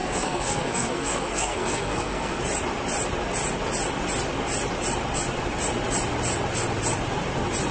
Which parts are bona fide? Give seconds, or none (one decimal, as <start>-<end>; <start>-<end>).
2.4-7.7